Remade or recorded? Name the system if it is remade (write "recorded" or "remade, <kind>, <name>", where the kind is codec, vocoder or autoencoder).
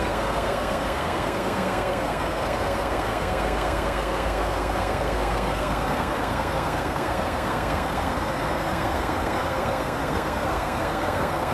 remade, codec, SNAC